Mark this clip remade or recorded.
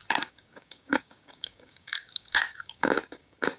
remade